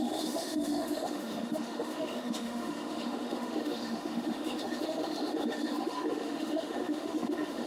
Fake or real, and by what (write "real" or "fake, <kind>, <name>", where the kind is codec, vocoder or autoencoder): fake, autoencoder, DAC-VAE